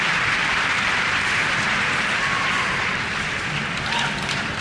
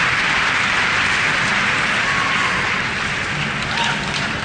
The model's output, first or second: first